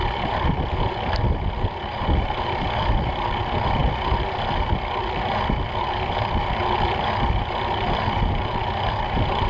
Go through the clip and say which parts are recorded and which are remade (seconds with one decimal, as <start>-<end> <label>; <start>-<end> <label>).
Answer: 0.0-9.5 recorded